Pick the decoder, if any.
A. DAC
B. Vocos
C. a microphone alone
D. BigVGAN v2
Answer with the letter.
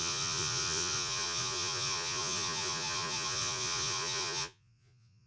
B